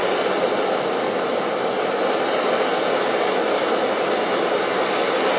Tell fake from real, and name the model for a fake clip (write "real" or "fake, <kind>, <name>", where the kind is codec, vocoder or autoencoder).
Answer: real